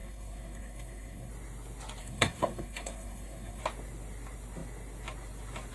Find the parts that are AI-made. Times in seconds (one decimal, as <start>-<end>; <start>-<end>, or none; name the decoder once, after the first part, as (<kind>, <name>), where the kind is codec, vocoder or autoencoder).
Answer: 0.0-1.3 (codec, SNAC); 2.0-3.6